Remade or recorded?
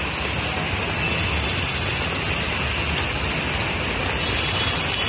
recorded